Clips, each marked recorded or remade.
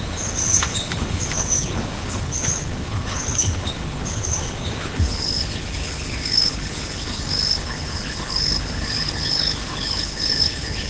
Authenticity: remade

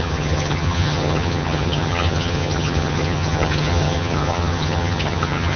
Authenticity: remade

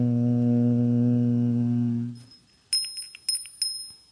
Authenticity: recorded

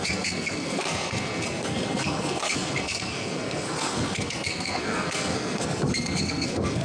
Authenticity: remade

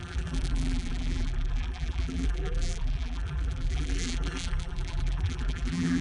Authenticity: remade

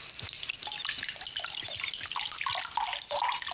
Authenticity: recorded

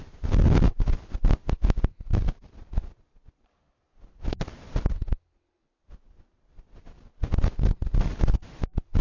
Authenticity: recorded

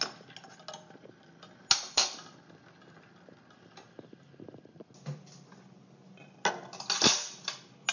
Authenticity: recorded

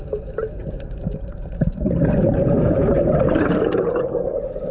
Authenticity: remade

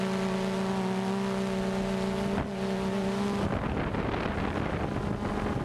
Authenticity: recorded